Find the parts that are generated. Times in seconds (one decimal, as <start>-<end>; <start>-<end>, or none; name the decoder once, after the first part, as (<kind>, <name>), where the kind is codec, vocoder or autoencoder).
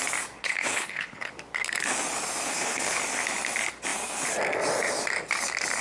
0.4-1.3 (codec, HILCodec); 2.5-3.0